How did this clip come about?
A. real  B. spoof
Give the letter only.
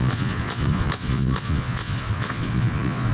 B